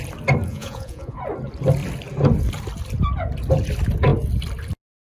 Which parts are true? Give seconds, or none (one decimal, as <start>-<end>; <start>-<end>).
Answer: 0.0-0.5; 1.2-5.0